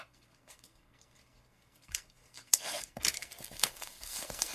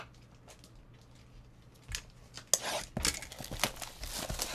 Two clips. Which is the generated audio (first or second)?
first